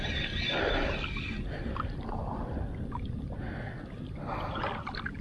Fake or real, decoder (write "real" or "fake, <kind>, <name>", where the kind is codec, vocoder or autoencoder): real